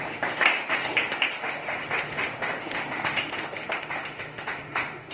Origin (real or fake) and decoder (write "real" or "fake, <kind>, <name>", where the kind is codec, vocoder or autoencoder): fake, autoencoder, DAC-VAE